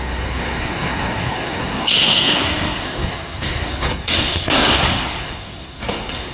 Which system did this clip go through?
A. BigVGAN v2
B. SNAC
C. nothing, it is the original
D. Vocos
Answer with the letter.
B